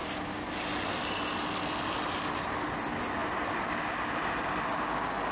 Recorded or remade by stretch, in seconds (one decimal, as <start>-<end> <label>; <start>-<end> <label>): 0.0-5.3 recorded

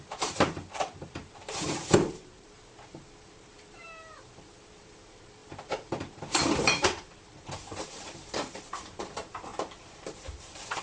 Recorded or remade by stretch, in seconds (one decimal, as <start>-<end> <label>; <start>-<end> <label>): 0.0-10.8 remade

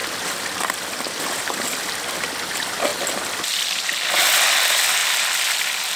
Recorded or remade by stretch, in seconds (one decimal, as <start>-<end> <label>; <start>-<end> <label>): 0.0-6.0 recorded

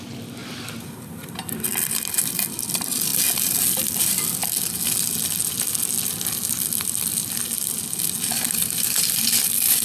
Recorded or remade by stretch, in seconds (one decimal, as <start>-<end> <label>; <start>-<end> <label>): 0.0-0.4 remade; 0.4-1.0 recorded; 1.0-3.1 remade; 3.1-3.7 recorded; 3.7-4.4 remade; 4.4-8.8 recorded; 8.8-9.8 remade

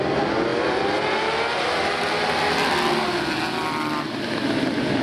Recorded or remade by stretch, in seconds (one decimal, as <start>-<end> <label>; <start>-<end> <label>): 0.0-5.0 recorded

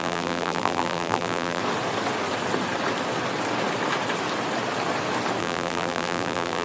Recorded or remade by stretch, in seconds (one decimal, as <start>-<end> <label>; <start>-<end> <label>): 0.0-1.6 remade; 1.6-5.4 recorded; 5.4-6.6 remade

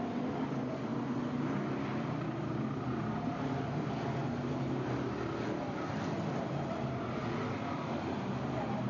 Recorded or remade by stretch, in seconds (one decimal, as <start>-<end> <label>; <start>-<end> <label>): 0.0-0.9 remade; 0.9-2.5 recorded; 2.5-4.2 remade; 4.2-7.5 recorded; 7.5-8.9 remade

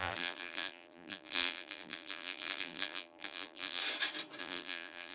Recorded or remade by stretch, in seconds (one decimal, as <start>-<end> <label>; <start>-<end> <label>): 0.0-3.8 remade; 3.8-4.4 recorded; 4.4-5.1 remade